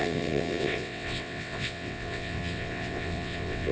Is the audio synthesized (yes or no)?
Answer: yes